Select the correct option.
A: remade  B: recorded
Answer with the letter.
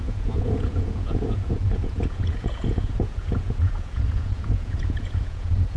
A